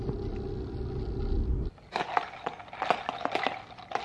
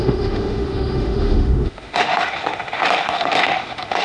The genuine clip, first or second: first